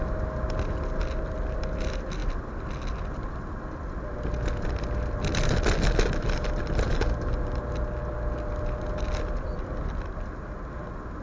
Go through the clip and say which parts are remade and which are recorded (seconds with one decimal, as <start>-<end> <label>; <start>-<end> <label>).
0.0-11.2 recorded